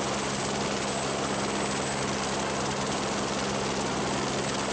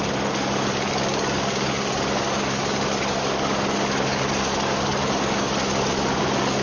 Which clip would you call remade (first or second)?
second